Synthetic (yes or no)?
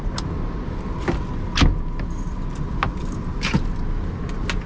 no